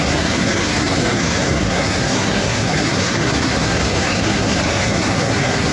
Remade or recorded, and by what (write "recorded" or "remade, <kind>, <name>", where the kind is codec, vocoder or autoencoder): remade, codec, SNAC